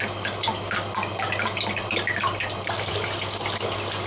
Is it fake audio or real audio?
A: real